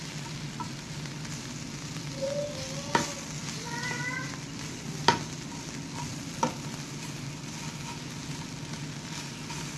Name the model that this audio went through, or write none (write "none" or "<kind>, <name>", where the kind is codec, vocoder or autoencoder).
none